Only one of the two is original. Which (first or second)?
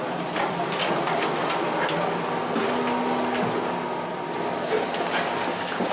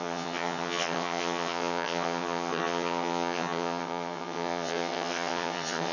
first